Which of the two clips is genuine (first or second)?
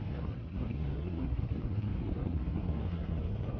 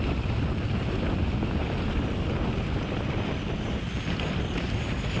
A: second